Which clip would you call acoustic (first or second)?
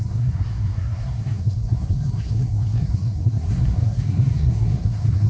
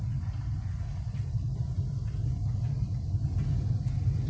second